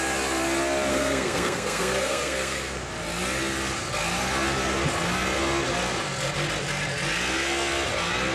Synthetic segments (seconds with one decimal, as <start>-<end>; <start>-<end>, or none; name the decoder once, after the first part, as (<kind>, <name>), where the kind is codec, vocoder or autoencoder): 0.9-2.9 (codec, SNAC)